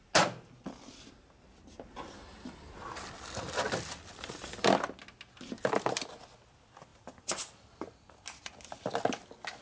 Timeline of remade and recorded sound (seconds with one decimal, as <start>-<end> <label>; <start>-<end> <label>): 0.0-9.6 recorded